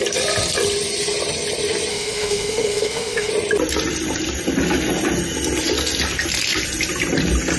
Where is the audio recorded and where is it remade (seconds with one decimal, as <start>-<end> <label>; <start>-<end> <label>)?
0.0-1.9 recorded; 1.9-3.3 remade; 3.3-7.6 recorded